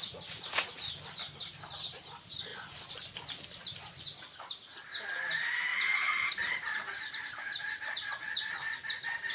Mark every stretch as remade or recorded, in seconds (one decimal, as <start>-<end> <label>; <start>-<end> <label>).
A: 0.0-0.9 remade; 0.9-9.3 recorded